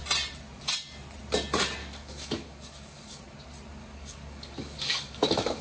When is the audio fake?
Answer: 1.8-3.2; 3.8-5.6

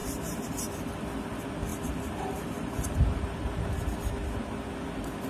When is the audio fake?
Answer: 0.0-0.9; 1.7-3.8